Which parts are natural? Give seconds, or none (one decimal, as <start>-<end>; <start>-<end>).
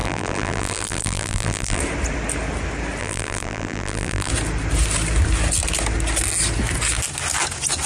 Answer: 1.8-3.0; 4.3-7.9